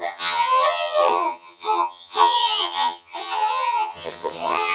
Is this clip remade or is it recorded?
remade